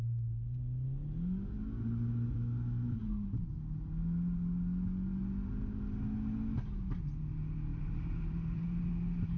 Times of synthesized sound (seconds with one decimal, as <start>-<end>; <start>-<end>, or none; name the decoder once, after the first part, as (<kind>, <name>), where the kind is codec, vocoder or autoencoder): 7.7-9.4 (vocoder, BigVGAN v2)